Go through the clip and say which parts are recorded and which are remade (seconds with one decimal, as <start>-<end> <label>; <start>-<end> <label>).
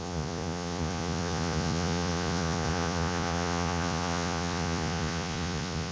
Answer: 0.0-5.9 remade